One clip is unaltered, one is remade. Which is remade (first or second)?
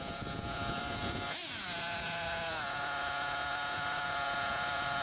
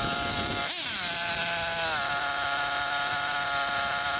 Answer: first